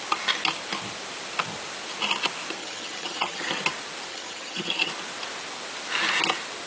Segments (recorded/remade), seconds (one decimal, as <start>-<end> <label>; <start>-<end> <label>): 0.0-2.6 recorded; 2.6-3.6 remade; 3.6-4.1 recorded; 4.1-4.9 remade; 4.9-6.7 recorded